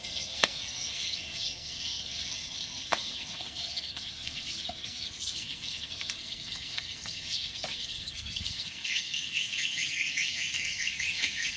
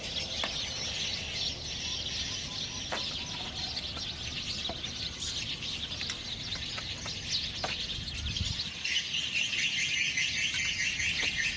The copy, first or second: first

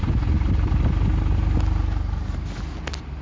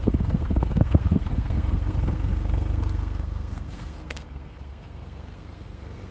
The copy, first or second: second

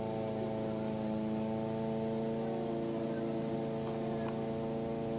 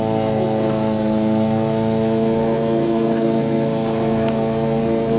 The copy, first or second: second